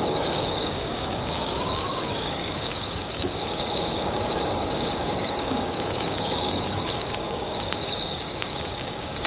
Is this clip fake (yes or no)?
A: yes